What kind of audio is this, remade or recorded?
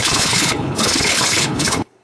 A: remade